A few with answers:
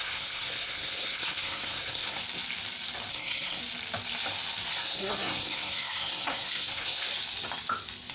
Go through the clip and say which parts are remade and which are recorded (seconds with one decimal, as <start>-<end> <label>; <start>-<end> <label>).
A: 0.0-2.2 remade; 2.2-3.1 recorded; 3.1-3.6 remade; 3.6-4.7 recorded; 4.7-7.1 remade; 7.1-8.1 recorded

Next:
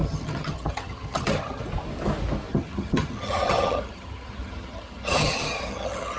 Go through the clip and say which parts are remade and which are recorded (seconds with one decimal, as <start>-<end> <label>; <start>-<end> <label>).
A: 0.0-1.6 remade; 1.6-2.5 recorded; 2.5-6.2 remade

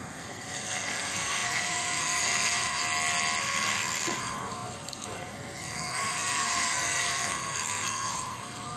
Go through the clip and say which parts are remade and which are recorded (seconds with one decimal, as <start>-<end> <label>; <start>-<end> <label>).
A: 0.0-2.8 remade; 2.8-3.4 recorded; 3.4-8.8 remade

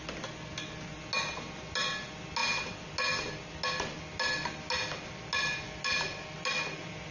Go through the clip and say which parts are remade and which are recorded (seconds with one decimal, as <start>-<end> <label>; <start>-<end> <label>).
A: 0.0-7.1 recorded

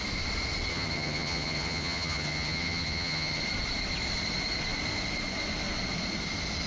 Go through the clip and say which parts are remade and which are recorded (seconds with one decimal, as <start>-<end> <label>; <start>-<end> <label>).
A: 0.0-0.7 recorded; 0.7-3.4 remade; 3.4-6.7 recorded

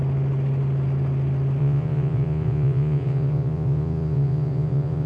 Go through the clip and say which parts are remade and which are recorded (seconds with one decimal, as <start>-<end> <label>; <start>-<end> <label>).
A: 0.0-1.6 recorded; 1.6-5.1 remade

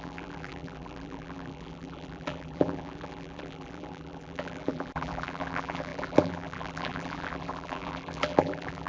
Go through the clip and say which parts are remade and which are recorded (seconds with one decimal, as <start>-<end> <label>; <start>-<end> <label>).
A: 0.0-8.9 remade